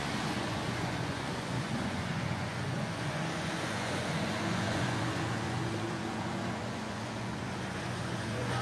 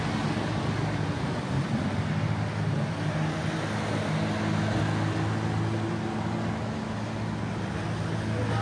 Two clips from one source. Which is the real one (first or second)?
second